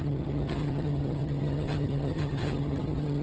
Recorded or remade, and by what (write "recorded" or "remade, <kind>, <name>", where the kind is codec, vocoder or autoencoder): remade, vocoder, HiFi-GAN